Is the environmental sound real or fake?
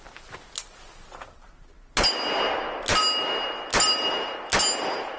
real